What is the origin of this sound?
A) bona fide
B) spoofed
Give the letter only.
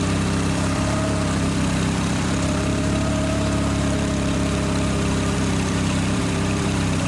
B